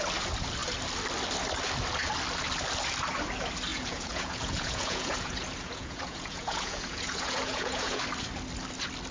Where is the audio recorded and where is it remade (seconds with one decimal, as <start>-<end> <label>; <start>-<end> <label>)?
0.0-3.7 recorded; 3.7-8.0 remade; 8.0-9.1 recorded